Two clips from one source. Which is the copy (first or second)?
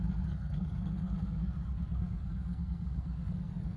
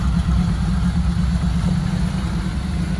first